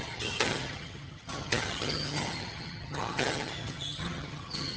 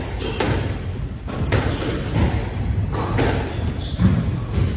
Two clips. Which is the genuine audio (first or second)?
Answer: second